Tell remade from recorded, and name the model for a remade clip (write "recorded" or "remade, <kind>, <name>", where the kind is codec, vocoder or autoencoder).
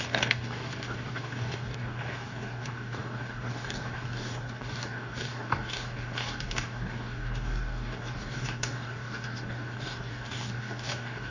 remade, codec, DAC